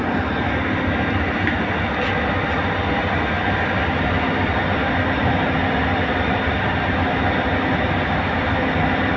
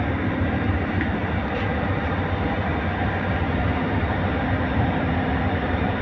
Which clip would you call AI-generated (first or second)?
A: second